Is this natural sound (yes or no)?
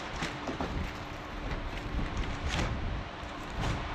no